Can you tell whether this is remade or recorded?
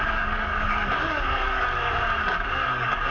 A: remade